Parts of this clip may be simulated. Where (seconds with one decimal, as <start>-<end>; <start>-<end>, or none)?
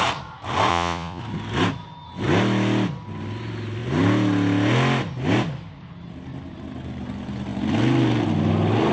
0.7-1.2